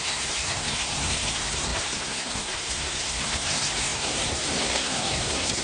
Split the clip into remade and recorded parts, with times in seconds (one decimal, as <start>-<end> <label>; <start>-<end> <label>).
0.0-5.6 remade